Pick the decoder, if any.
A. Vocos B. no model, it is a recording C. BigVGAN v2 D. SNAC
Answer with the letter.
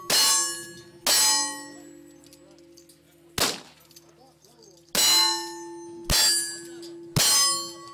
B